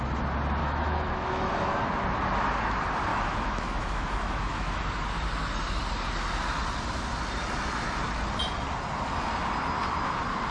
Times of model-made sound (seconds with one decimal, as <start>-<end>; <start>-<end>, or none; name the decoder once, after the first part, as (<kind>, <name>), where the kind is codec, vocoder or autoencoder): 0.6-1.5 (autoencoder, DAC-VAE); 3.1-4.8